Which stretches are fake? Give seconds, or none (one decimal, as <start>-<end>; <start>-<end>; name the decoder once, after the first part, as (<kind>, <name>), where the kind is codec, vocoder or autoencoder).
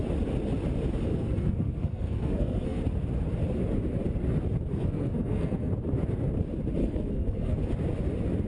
1.1-2.8 (codec, SNAC); 4.7-5.7; 6.8-7.6